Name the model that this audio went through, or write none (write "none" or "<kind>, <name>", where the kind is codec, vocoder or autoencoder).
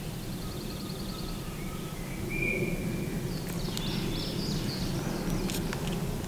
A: none